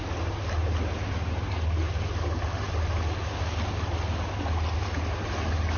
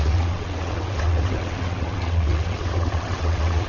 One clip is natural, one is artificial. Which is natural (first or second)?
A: first